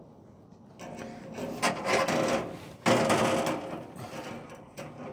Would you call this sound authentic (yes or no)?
yes